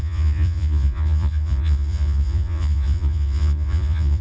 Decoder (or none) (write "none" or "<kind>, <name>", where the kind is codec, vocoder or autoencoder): vocoder, Vocos